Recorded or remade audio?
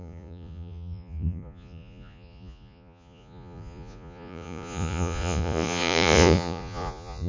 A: remade